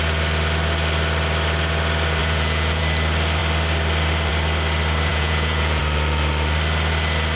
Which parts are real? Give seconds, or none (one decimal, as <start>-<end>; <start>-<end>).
0.0-2.2; 2.8-5.1; 5.8-7.4